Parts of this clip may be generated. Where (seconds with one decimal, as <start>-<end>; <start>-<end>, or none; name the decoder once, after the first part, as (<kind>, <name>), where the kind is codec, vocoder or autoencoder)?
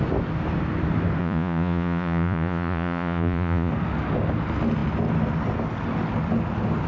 1.2-3.7 (vocoder, Vocos)